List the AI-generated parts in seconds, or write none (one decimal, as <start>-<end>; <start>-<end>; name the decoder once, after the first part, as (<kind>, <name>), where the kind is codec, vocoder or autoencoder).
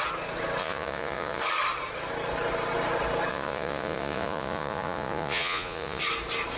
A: 0.6-1.4 (vocoder, Vocos); 3.3-6.0